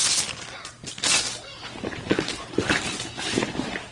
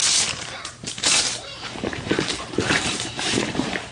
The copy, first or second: second